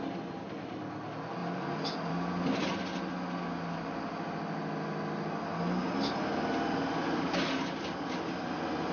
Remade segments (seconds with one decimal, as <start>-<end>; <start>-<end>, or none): none